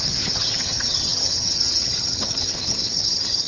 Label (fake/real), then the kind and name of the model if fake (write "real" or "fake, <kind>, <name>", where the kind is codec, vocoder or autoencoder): fake, vocoder, HiFi-GAN